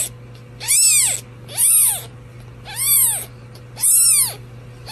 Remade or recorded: recorded